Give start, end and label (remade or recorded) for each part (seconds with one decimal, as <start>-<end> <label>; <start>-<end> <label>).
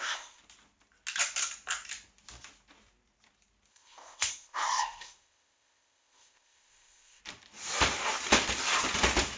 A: 0.0-0.4 remade; 0.4-3.7 recorded; 3.7-7.2 remade; 7.2-9.4 recorded